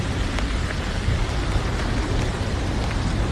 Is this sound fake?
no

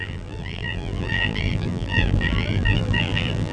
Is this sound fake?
yes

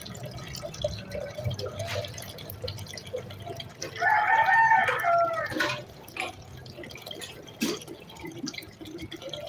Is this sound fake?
no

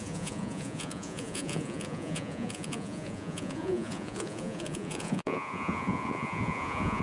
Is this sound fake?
yes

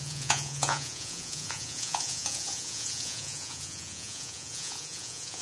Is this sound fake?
yes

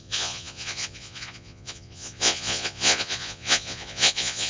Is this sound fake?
yes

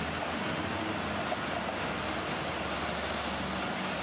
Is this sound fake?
no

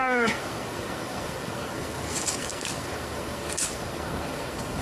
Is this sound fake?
yes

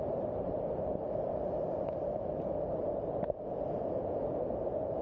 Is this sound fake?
no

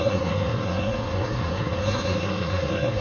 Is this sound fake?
yes